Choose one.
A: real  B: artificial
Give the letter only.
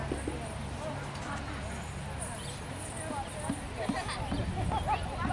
A